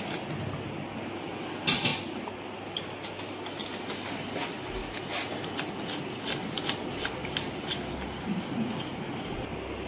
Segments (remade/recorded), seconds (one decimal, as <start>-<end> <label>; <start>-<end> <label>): 0.0-9.9 recorded